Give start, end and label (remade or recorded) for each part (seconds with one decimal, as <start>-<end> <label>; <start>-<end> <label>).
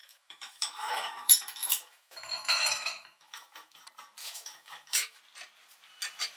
0.0-3.8 remade; 3.8-4.2 recorded; 4.2-5.2 remade; 5.2-6.4 recorded